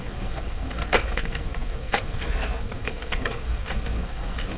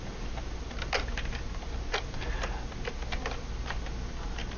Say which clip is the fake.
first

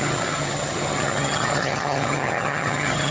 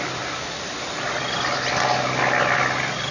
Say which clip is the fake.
first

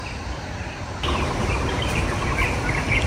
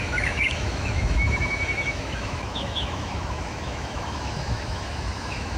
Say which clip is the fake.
second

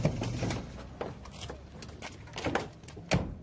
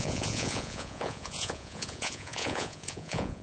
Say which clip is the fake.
second